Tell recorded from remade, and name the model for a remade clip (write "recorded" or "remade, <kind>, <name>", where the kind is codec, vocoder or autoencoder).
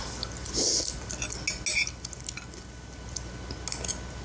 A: recorded